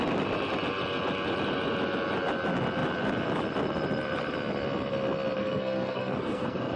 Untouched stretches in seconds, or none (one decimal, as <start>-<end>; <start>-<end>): 0.0-5.4